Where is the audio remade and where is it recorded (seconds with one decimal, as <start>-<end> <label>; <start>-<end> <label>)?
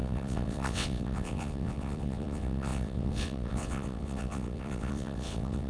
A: 0.0-5.7 remade